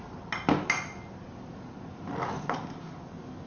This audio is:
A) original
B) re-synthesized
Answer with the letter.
A